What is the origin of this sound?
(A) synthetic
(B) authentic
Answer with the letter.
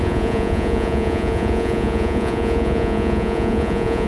A